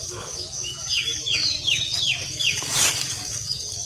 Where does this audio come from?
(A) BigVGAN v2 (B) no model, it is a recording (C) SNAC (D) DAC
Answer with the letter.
D